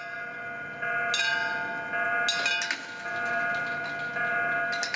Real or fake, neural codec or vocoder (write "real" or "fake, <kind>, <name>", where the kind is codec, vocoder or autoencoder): real